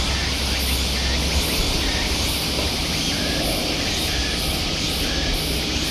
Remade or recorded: recorded